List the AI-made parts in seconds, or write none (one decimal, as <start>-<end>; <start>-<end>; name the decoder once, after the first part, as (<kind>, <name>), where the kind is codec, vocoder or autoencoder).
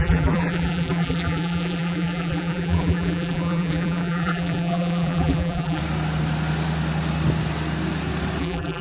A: 0.0-5.8 (vocoder, BigVGAN v2); 8.4-8.8